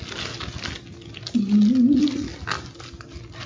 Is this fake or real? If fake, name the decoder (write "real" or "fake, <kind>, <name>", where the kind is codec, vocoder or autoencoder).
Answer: real